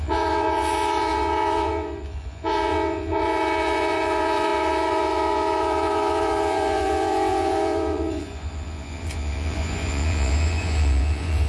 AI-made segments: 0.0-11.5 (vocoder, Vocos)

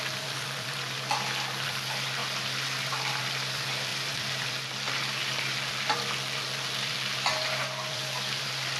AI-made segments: 0.0-2.2 (vocoder, BigVGAN v2); 2.8-8.8

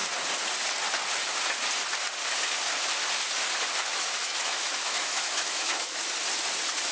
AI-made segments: 4.2-6.0 (autoencoder, DAC-VAE)

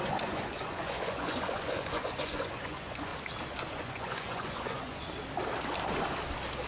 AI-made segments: 0.0-3.1 (vocoder, Vocos); 3.7-5.0